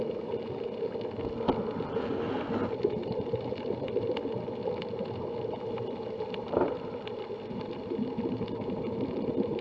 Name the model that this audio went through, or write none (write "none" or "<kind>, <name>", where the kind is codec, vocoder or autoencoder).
none